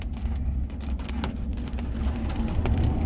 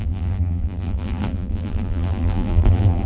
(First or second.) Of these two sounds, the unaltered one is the first